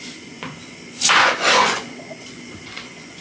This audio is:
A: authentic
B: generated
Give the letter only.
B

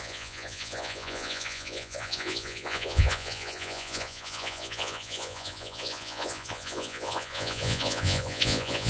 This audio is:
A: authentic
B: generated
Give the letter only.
B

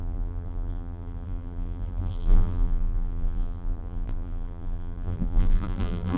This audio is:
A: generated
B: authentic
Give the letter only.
A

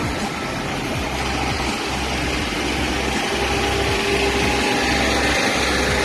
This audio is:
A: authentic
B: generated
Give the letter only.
A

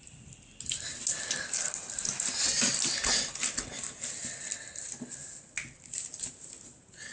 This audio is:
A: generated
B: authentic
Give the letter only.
B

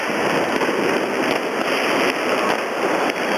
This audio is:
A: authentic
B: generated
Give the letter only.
A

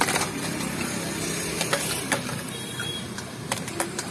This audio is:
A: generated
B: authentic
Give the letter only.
A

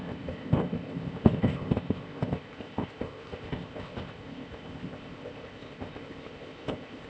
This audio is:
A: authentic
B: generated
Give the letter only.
B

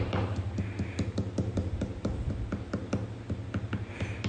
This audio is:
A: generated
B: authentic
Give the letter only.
B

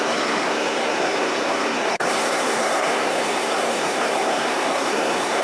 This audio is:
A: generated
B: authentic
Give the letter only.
A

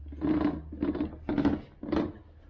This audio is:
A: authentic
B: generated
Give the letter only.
A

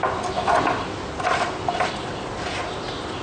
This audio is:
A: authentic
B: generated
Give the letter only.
A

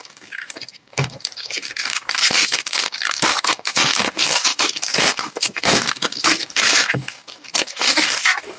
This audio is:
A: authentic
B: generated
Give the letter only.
B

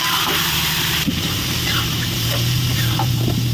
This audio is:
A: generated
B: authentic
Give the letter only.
A